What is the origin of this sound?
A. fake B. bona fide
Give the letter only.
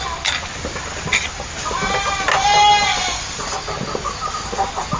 B